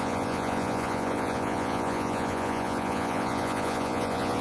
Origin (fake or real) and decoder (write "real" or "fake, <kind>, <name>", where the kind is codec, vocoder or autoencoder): fake, vocoder, Vocos